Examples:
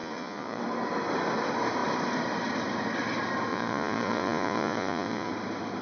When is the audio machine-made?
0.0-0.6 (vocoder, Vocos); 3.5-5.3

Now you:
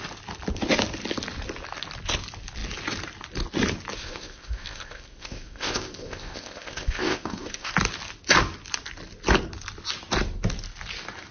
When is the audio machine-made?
4.0-7.7 (codec, ZipCodec)

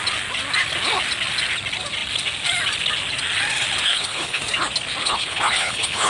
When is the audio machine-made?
3.9-4.4 (codec, HILCodec); 5.0-6.1

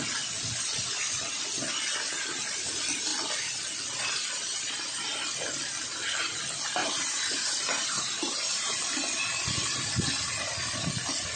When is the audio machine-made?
6.8-8.8 (vocoder, BigVGAN v2)

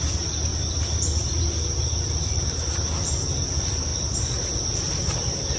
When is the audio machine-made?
0.5-1.4 (vocoder, BigVGAN v2)

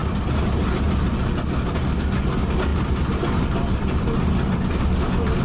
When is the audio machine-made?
0.0-0.5 (vocoder, BigVGAN v2); 2.7-4.8